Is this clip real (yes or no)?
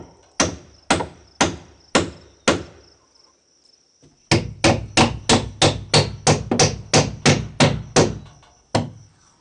yes